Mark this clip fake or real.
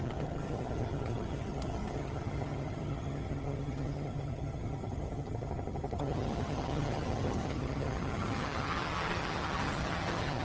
fake